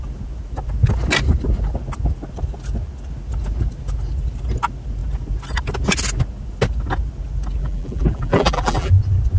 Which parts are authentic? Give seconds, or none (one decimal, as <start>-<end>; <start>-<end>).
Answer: 0.0-7.6; 8.9-9.4